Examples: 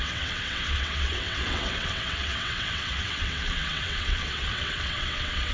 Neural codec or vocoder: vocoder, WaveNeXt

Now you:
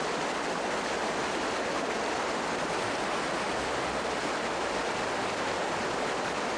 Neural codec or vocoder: none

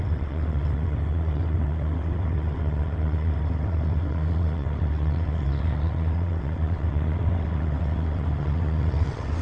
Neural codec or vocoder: vocoder, WaveNeXt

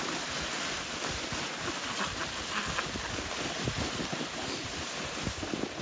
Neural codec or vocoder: none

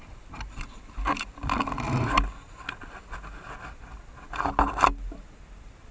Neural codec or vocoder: none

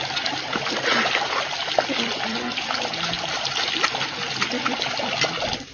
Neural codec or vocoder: none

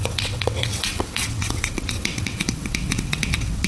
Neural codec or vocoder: vocoder, WaveNeXt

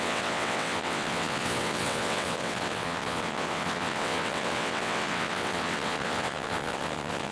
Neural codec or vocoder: vocoder, WaveNeXt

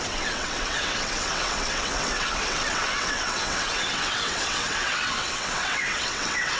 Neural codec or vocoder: vocoder, WaveNeXt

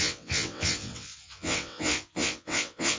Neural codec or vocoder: vocoder, WaveNeXt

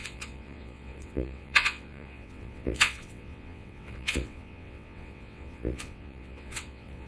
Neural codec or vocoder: vocoder, WaveNeXt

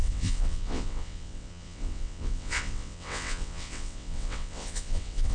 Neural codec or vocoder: vocoder, WaveNeXt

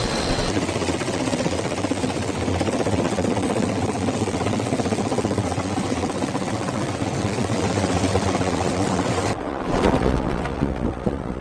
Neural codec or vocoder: vocoder, WaveNeXt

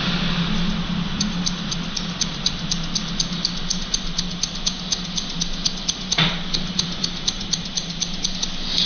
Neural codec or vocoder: none